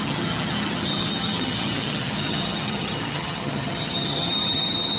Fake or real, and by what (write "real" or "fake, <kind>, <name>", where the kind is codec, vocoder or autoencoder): fake, vocoder, HiFi-GAN